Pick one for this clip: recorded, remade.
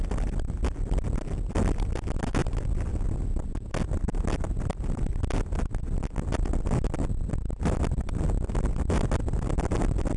recorded